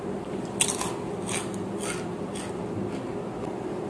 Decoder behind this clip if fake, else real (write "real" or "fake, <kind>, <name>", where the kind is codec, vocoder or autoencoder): real